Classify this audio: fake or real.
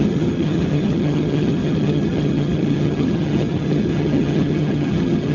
fake